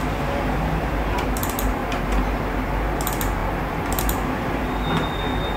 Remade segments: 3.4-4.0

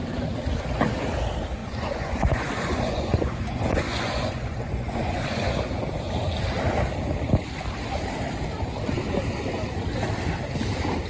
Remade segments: 1.6-5.6